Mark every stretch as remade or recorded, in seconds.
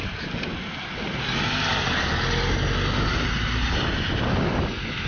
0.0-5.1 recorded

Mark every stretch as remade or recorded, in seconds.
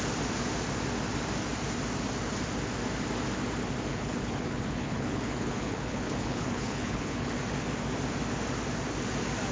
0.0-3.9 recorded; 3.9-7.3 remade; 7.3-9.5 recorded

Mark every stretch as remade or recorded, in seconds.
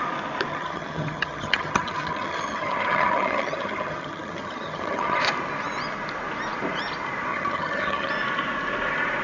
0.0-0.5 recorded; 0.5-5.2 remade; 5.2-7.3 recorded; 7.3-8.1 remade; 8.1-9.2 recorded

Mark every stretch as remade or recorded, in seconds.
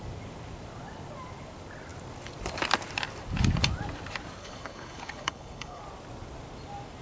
0.0-4.4 recorded; 4.4-5.8 remade; 5.8-7.0 recorded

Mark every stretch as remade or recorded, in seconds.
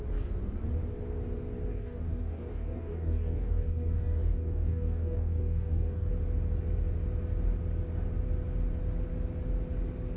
0.0-1.7 recorded; 1.7-6.1 remade; 6.1-10.2 recorded